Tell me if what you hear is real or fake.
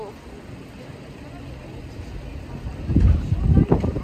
real